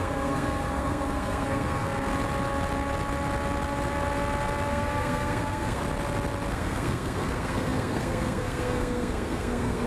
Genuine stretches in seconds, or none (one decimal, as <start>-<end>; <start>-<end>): 2.1-4.7; 5.8-6.5